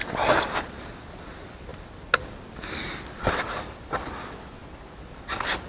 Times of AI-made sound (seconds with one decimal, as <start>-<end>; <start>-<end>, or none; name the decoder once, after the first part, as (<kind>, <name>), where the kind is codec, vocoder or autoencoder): none